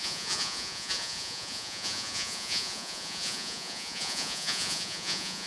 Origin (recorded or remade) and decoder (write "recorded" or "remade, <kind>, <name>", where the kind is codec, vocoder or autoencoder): remade, vocoder, Vocos